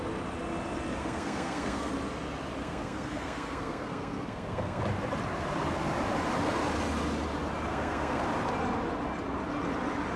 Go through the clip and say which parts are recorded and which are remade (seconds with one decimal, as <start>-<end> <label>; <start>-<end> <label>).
0.0-1.0 recorded; 1.0-1.9 remade; 1.9-2.6 recorded; 2.6-4.8 remade; 4.8-7.7 recorded; 7.7-8.2 remade; 8.2-10.2 recorded